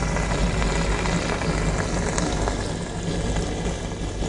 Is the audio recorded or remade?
recorded